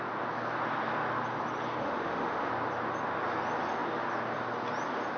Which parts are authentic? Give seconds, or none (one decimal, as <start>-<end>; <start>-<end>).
0.0-1.8; 2.5-5.2